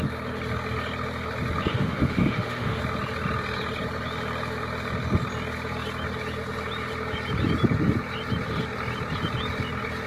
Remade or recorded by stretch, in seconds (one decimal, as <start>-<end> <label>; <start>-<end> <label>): 0.0-1.7 recorded; 1.7-2.8 remade; 2.8-10.1 recorded